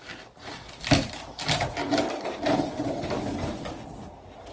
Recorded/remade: recorded